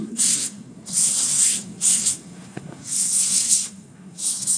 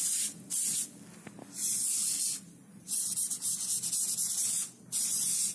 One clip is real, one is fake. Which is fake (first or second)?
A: first